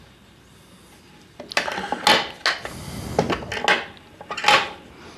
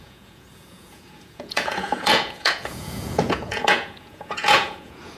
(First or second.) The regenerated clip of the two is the second